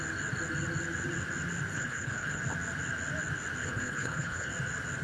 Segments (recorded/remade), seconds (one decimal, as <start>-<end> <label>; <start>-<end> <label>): 0.0-1.7 recorded; 1.7-2.4 remade; 2.4-3.6 recorded; 3.6-4.5 remade; 4.5-5.0 recorded